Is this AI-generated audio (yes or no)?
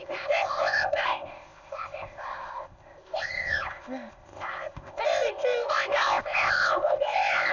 yes